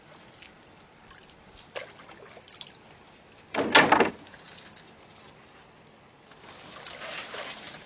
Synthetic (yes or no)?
no